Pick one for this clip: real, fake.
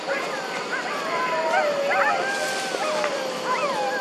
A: real